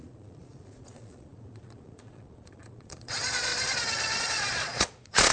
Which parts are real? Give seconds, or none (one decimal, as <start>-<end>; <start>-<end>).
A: 3.5-4.2